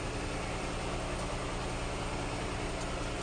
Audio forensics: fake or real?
real